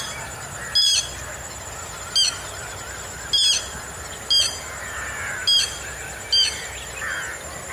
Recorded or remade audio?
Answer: recorded